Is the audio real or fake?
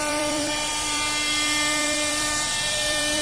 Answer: fake